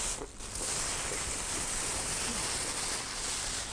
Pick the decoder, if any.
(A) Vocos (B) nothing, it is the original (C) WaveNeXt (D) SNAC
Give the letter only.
B